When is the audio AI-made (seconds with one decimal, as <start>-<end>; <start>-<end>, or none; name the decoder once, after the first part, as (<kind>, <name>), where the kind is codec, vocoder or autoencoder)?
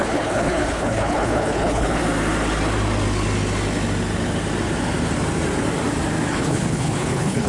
0.0-2.0 (codec, HILCodec); 6.3-7.5